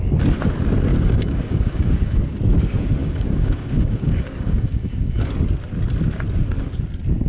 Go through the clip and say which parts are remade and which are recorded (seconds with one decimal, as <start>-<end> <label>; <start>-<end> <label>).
0.0-0.9 recorded; 0.9-2.2 remade; 2.2-3.0 recorded; 3.0-5.3 remade; 5.3-7.3 recorded